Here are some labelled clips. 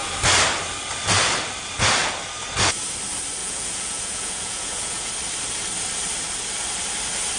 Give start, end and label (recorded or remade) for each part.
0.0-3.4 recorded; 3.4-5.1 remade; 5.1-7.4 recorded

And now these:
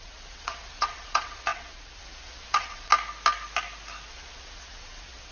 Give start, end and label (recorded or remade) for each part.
0.0-2.9 remade; 2.9-4.1 recorded; 4.1-5.3 remade

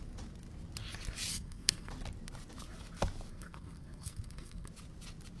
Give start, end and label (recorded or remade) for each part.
0.0-1.3 recorded; 1.3-1.9 remade; 1.9-3.3 recorded; 3.3-4.7 remade; 4.7-5.4 recorded

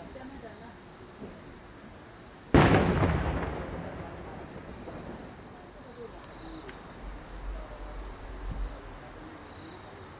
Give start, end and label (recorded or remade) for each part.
0.0-10.2 recorded

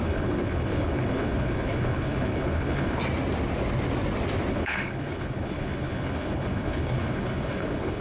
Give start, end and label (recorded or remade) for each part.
0.0-3.0 remade; 3.0-4.5 recorded; 4.5-8.0 remade

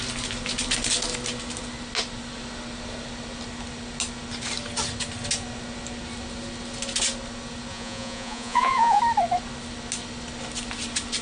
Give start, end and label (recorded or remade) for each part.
0.0-7.7 recorded; 7.7-9.0 remade; 9.0-11.2 recorded

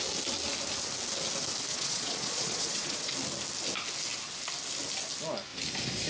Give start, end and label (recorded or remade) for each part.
0.0-1.7 recorded; 1.7-3.1 remade; 3.1-6.1 recorded

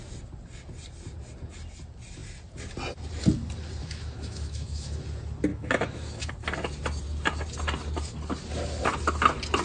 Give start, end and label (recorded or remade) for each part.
0.0-3.8 recorded; 3.8-5.0 remade; 5.0-5.5 recorded; 5.5-6.3 remade; 6.3-9.6 recorded